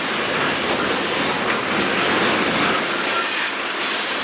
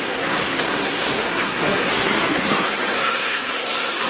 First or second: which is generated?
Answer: second